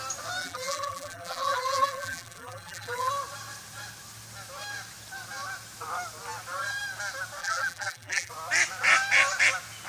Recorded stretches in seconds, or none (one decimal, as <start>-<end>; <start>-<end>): 0.0-0.4; 3.1-7.4; 8.3-9.9